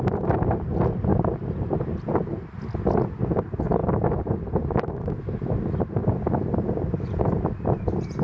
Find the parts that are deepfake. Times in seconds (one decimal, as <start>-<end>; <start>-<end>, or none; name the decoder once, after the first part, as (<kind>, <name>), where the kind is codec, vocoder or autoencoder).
1.1-2.2 (vocoder, BigVGAN v2); 3.8-5.0; 6.0-8.2

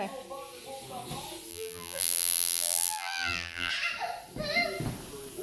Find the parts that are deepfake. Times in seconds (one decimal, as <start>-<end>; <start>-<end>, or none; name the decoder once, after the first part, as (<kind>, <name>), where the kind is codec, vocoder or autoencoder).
1.5-3.7 (vocoder, BigVGAN v2)

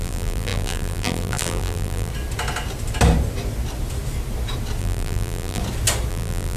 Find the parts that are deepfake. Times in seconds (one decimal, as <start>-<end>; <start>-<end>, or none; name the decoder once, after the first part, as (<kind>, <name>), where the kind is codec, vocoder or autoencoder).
0.0-2.1 (vocoder, BigVGAN v2); 4.8-5.6; 6.1-6.6